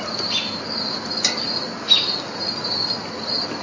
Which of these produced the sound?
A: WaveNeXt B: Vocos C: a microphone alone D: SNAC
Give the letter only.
C